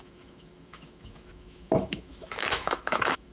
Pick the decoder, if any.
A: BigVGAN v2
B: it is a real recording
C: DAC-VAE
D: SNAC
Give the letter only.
C